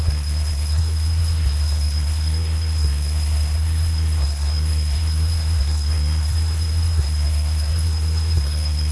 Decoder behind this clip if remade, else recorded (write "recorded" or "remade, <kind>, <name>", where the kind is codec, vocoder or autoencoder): remade, codec, SNAC